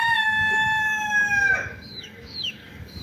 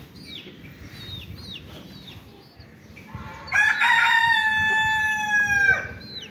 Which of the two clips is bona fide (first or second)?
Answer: second